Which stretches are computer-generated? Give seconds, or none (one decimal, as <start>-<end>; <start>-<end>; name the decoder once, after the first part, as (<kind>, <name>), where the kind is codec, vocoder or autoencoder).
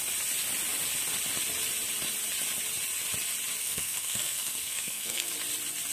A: 3.6-5.3 (codec, SNAC)